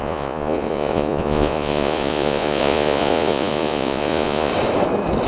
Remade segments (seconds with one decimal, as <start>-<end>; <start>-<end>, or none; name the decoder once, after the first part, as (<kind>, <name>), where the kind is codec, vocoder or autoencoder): 0.0-4.5 (vocoder, Vocos)